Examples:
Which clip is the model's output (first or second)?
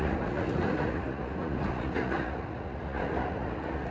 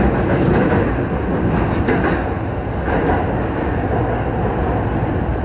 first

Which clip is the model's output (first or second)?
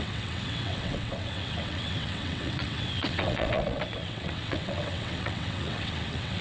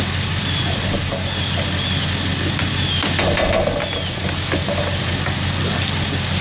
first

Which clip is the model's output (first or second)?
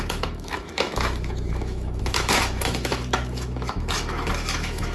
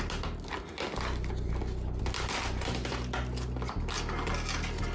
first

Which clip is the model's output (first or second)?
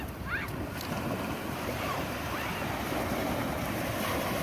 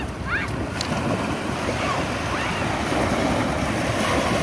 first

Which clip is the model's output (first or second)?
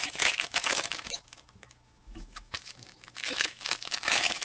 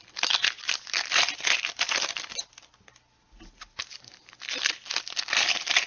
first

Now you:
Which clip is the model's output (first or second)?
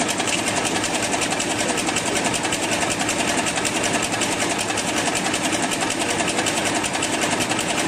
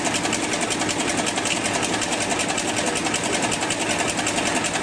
first